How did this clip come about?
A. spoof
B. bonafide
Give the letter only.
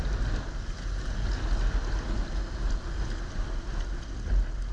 B